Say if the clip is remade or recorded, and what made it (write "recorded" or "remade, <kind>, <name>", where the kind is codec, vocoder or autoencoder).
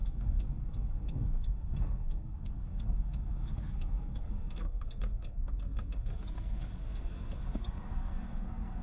remade, codec, SNAC